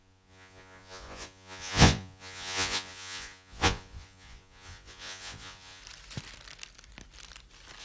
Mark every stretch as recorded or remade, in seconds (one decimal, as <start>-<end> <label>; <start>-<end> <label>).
0.0-5.8 remade; 5.8-7.8 recorded